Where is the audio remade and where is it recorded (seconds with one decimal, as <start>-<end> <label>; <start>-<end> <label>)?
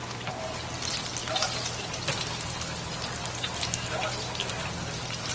0.0-5.3 recorded